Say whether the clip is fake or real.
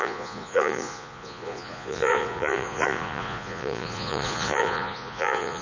fake